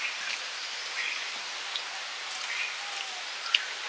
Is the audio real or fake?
real